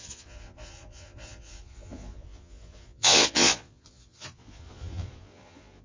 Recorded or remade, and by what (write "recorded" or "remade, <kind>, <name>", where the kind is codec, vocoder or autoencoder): remade, vocoder, Vocos